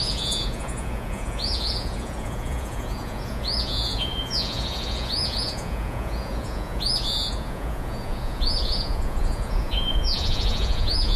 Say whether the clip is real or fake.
fake